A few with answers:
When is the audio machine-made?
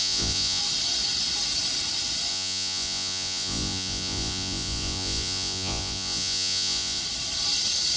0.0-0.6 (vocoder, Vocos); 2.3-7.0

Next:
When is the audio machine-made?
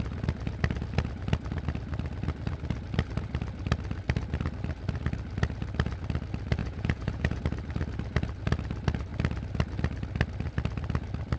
6.6-7.4 (vocoder, Vocos)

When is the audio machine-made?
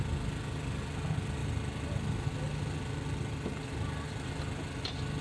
none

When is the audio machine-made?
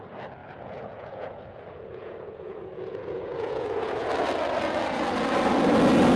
0.4-4.1 (vocoder, Vocos)